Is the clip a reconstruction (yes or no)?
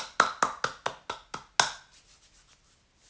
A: no